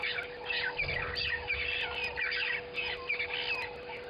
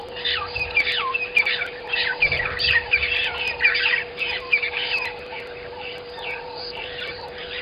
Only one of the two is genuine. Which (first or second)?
first